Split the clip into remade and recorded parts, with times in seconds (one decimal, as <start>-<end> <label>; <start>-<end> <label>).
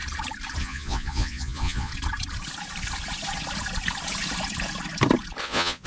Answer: 0.0-0.6 recorded; 0.6-1.9 remade; 1.9-5.4 recorded; 5.4-5.9 remade